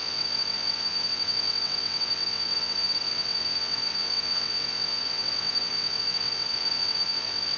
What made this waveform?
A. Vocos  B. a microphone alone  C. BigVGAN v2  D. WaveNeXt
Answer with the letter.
D